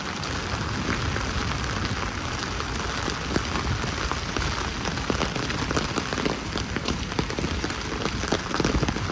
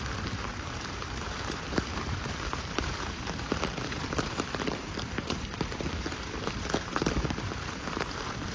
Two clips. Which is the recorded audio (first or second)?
first